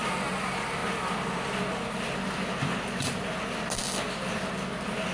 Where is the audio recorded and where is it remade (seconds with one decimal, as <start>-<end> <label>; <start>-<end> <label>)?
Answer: 0.0-5.1 recorded

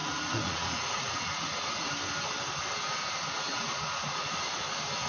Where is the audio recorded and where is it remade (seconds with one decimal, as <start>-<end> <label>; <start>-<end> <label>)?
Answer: 0.0-1.9 remade; 1.9-3.5 recorded; 3.5-4.3 remade; 4.3-5.1 recorded

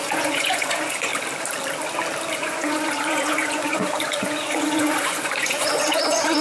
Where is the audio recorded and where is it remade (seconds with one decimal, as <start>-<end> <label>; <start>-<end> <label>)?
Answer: 0.0-1.1 remade; 1.1-2.3 recorded; 2.3-6.4 remade

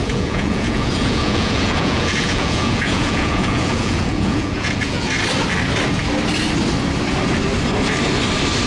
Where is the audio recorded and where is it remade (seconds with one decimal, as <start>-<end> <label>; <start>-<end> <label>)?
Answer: 0.0-5.1 remade; 5.1-8.7 recorded

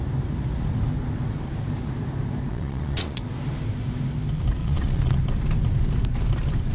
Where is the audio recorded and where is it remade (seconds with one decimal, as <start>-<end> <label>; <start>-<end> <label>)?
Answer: 0.0-2.5 recorded; 2.5-3.2 remade; 3.2-4.6 recorded; 4.6-5.2 remade; 5.2-6.7 recorded

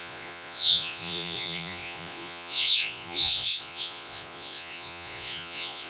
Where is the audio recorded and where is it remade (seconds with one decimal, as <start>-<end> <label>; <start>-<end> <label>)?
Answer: 0.0-5.9 remade